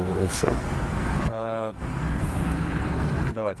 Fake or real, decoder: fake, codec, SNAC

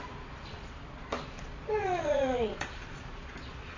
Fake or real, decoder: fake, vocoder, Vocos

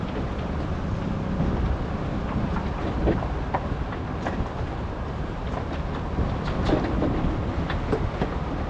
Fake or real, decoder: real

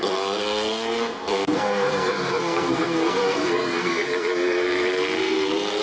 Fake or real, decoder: fake, codec, SNAC